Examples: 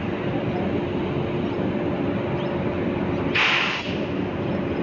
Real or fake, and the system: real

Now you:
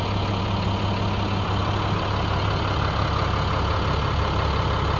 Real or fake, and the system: real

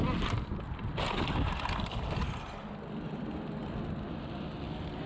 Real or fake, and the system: real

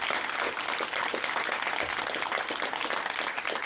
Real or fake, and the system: real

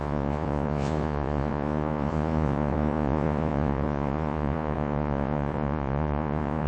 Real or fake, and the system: fake, vocoder, Vocos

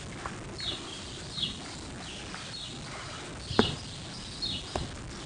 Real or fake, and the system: real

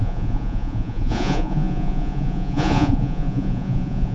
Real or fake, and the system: fake, vocoder, Vocos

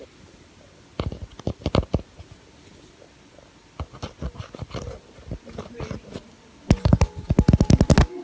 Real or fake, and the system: real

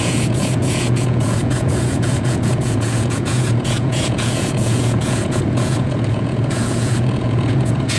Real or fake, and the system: fake, vocoder, Vocos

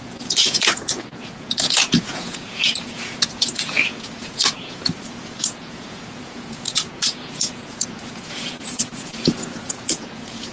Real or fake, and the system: fake, vocoder, Vocos